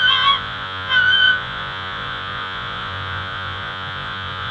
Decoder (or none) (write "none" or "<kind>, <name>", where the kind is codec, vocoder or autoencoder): vocoder, Vocos